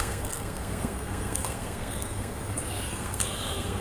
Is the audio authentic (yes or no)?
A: no